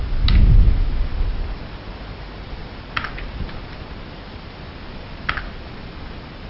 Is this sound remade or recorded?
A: recorded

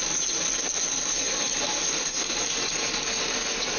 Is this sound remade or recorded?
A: recorded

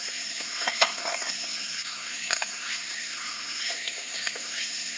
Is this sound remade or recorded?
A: remade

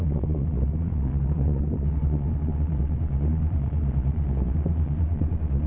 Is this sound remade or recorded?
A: remade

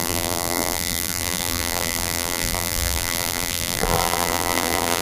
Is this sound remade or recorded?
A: remade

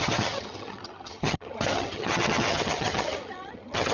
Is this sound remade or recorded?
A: remade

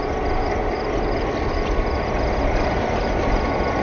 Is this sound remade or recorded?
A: recorded